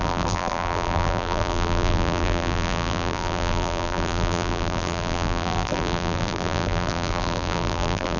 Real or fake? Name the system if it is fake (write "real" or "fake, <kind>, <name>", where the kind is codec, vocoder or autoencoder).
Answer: fake, vocoder, BigVGAN v2